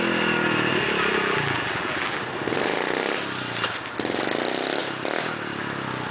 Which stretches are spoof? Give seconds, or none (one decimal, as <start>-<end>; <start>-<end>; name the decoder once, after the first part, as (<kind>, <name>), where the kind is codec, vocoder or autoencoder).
1.1-2.2 (vocoder, BigVGAN v2)